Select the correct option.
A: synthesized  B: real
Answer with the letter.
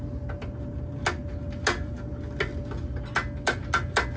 B